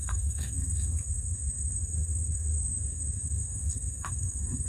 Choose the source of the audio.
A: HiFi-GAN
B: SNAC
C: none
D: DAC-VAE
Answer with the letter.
B